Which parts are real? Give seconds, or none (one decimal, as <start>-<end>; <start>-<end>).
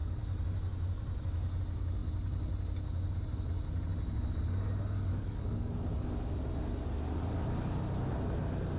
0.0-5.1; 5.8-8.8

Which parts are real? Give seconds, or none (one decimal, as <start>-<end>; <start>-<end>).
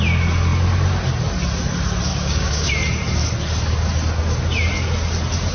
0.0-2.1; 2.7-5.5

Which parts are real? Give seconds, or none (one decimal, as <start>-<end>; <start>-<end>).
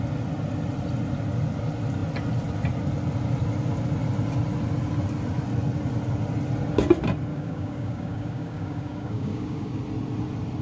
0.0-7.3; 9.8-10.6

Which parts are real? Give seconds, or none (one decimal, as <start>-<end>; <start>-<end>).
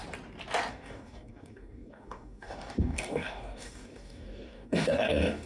0.0-0.7